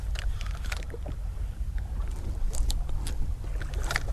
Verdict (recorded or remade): recorded